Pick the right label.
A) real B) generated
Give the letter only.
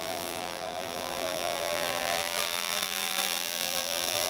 B